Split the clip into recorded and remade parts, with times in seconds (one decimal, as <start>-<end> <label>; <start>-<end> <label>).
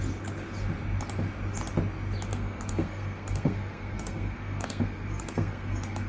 0.0-2.3 recorded; 2.3-6.1 remade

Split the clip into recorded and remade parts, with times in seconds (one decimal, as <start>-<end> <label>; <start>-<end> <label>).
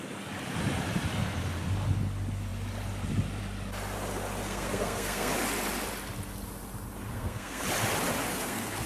0.0-4.4 recorded; 4.4-5.3 remade; 5.3-7.1 recorded; 7.1-7.6 remade; 7.6-8.3 recorded; 8.3-8.9 remade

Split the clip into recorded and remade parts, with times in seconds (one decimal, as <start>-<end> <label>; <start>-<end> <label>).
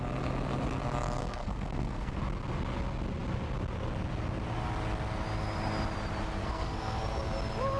0.0-1.2 recorded; 1.2-2.2 remade; 2.2-6.4 recorded; 6.4-7.0 remade; 7.0-7.8 recorded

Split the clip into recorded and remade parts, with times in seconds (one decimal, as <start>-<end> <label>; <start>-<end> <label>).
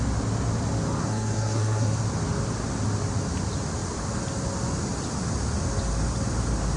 0.0-1.0 recorded; 1.0-2.0 remade; 2.0-6.8 recorded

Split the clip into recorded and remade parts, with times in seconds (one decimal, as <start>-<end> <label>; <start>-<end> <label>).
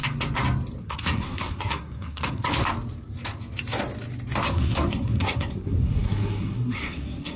0.0-0.8 recorded; 0.8-2.5 remade; 2.5-4.5 recorded; 4.5-7.4 remade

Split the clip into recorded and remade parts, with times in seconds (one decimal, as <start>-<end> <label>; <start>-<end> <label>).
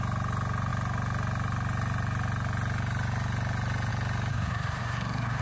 0.0-4.3 recorded; 4.3-5.4 remade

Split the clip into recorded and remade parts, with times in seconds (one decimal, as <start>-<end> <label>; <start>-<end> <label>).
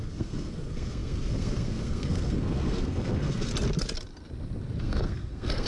0.0-3.5 remade; 3.5-4.8 recorded; 4.8-5.7 remade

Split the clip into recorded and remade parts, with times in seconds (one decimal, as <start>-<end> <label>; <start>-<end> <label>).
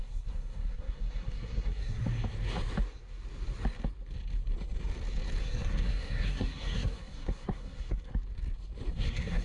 0.0-2.0 remade; 2.0-5.4 recorded; 5.4-8.1 remade; 8.1-8.9 recorded; 8.9-9.4 remade